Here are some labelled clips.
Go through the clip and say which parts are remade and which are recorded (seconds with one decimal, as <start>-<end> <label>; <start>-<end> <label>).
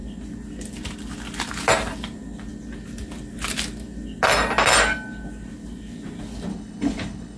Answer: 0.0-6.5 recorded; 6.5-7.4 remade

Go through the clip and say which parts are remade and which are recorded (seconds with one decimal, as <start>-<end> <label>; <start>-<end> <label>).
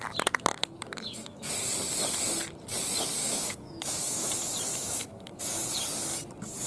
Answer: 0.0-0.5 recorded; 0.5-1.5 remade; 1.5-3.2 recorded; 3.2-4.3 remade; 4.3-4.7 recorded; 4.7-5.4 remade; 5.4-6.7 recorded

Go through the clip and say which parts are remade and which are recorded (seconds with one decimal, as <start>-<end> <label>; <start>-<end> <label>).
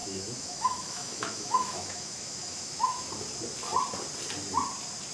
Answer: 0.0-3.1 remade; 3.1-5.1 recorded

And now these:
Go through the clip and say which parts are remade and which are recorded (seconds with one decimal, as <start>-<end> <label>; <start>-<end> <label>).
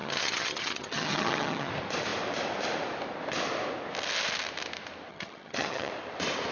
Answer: 0.0-1.7 remade; 1.7-5.1 recorded; 5.1-5.9 remade; 5.9-6.5 recorded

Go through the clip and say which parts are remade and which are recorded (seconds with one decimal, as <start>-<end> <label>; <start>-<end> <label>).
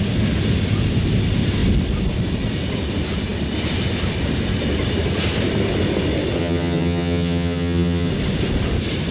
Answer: 0.0-6.4 recorded; 6.4-8.1 remade; 8.1-9.1 recorded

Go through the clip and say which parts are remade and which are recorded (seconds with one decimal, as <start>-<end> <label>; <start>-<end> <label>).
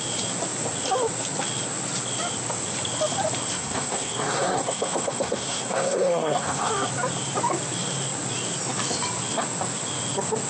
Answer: 0.0-3.6 recorded; 3.6-6.7 remade; 6.7-10.5 recorded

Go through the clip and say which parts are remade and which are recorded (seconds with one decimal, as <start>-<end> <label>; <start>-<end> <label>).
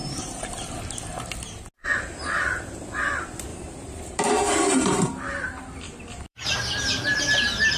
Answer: 0.0-0.5 remade; 0.5-3.5 recorded; 3.5-5.7 remade; 5.7-6.3 recorded; 6.3-7.8 remade